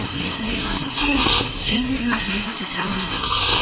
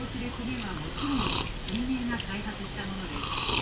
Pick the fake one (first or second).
first